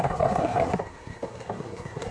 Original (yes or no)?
no